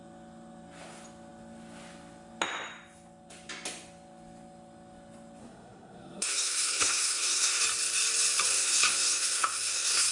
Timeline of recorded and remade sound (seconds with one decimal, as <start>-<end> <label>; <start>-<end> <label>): 0.0-5.4 recorded; 5.4-7.6 remade; 7.6-8.5 recorded; 8.5-10.1 remade